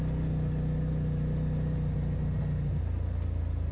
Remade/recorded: recorded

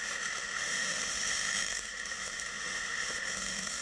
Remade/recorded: remade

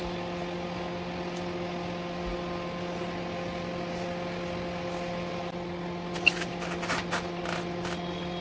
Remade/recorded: recorded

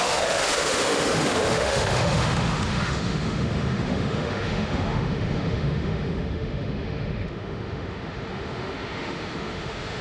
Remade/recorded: remade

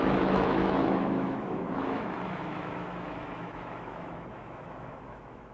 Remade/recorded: remade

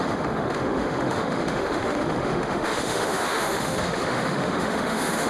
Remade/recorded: remade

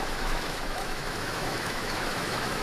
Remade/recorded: remade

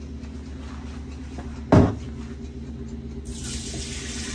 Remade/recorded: recorded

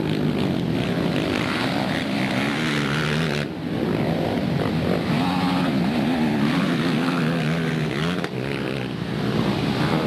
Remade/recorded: recorded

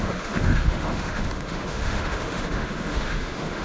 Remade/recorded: remade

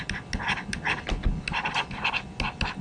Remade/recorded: recorded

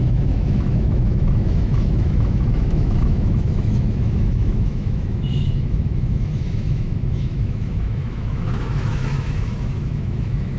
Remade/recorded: remade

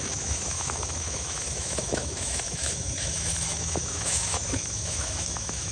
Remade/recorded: remade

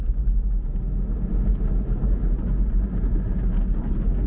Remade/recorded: recorded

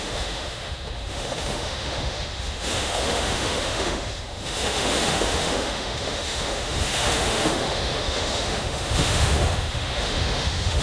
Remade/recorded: remade